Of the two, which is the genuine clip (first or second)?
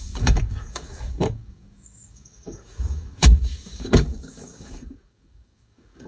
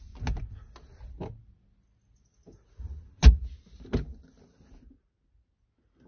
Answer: second